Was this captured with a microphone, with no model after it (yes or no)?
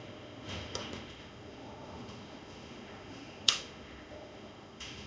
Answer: no